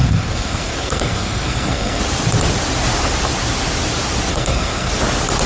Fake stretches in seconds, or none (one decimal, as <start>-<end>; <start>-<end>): 0.0-2.0; 4.3-4.9